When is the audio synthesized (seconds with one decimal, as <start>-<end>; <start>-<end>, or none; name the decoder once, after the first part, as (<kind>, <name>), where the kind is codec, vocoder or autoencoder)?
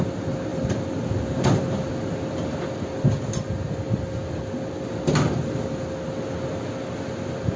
0.5-1.9 (vocoder, BigVGAN v2)